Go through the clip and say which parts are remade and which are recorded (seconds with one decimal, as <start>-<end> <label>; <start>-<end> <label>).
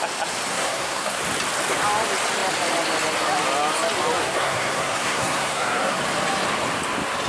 0.0-0.5 recorded; 0.5-1.2 remade; 1.2-4.2 recorded; 4.2-6.0 remade; 6.0-7.3 recorded